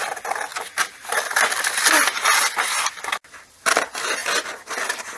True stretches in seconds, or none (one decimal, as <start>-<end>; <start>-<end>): 0.0-5.2